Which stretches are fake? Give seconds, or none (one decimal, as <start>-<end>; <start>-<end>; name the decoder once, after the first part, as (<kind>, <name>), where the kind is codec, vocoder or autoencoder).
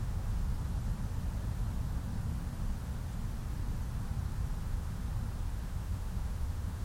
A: 0.0-0.5 (autoencoder, DAC-VAE); 4.6-5.0; 5.5-6.8